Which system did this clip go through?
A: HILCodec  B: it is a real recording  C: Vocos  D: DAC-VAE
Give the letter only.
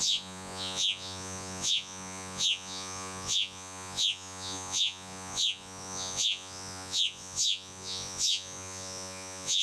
C